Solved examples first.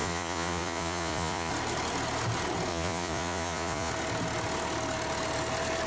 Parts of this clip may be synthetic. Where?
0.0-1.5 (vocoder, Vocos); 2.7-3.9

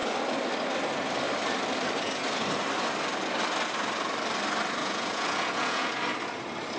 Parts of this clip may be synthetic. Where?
4.8-5.9 (vocoder, Vocos)

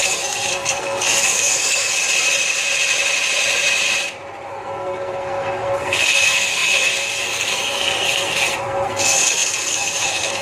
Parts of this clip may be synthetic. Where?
0.0-1.9 (codec, SNAC); 4.5-10.4